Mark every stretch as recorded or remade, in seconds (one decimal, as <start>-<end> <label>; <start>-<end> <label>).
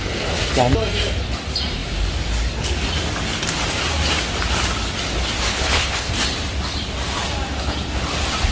0.0-5.5 recorded; 5.5-6.1 remade; 6.1-8.5 recorded